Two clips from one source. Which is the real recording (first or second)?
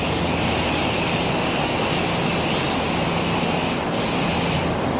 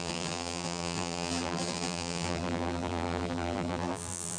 first